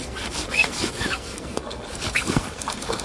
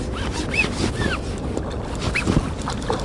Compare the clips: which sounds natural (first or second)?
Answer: second